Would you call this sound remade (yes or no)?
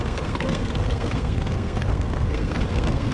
yes